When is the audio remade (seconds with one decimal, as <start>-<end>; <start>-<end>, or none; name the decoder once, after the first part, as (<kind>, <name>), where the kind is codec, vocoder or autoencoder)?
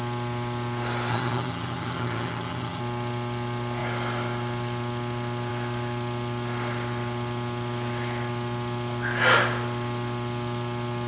1.1-2.8 (vocoder, HiFi-GAN)